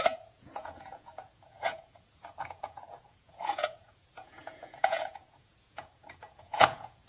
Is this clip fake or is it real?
fake